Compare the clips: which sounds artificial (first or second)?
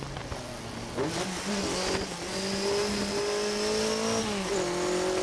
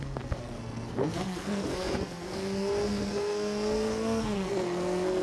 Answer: second